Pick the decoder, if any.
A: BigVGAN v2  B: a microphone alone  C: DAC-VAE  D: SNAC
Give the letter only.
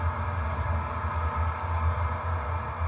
B